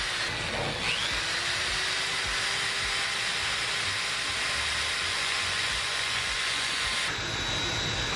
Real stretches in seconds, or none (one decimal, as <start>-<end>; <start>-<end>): 0.0-5.1; 6.9-8.2